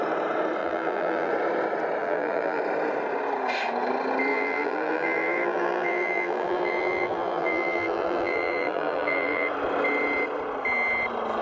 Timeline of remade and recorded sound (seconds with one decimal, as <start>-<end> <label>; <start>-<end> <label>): 0.0-0.6 recorded; 0.6-1.3 remade; 1.3-2.0 recorded; 2.0-2.6 remade; 2.6-4.3 recorded; 4.3-9.5 remade; 9.5-11.4 recorded